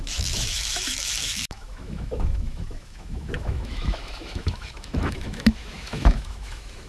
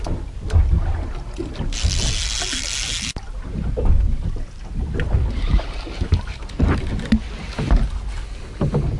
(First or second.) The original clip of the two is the second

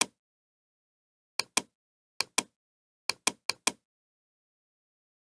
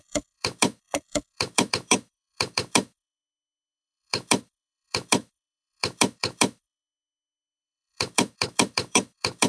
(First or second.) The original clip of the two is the first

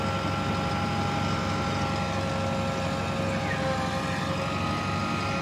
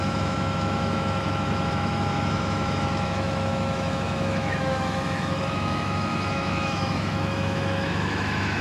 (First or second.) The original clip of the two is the first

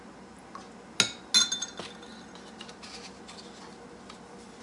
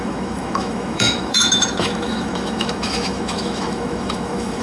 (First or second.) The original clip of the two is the first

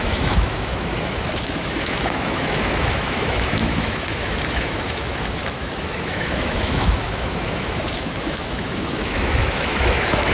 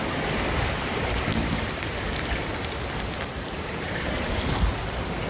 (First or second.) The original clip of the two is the second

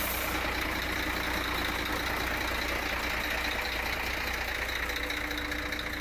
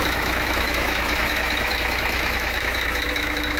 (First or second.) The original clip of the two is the first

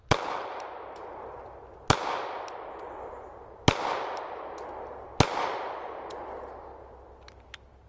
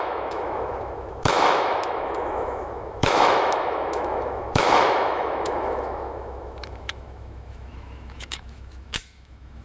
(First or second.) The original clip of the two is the first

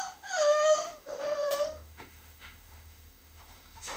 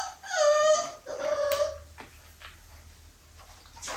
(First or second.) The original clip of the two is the second